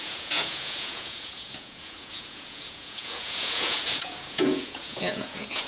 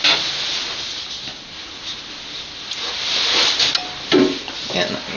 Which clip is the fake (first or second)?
first